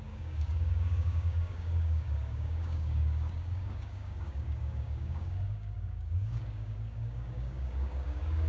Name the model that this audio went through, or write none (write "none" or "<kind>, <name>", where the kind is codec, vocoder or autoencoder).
codec, DAC